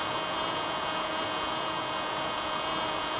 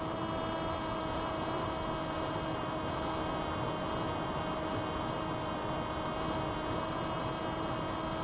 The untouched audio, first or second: second